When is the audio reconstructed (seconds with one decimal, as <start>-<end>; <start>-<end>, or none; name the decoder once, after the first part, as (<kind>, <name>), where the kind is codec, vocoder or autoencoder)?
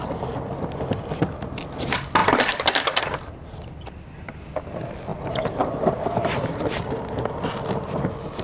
none